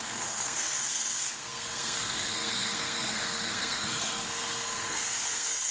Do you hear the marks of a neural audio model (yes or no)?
yes